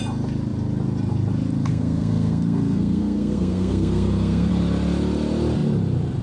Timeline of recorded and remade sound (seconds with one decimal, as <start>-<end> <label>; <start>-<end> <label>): 0.0-1.7 recorded; 1.7-4.5 remade; 4.5-6.2 recorded